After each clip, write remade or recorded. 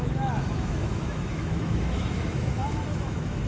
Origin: remade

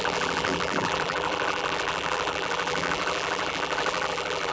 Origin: remade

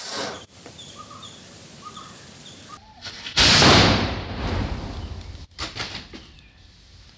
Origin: remade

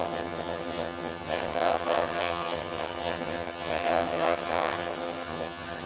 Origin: remade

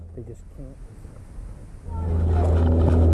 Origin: recorded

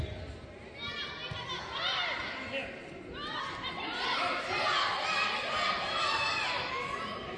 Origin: recorded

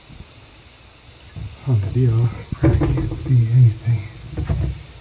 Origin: recorded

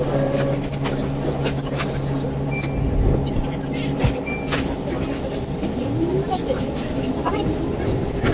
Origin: recorded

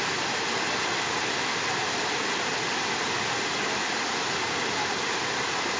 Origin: recorded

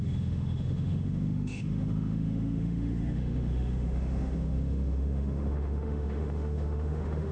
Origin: remade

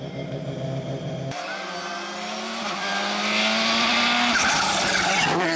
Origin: recorded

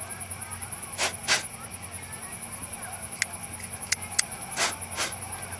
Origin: recorded